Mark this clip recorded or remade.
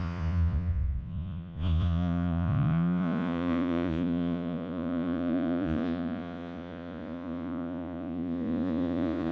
remade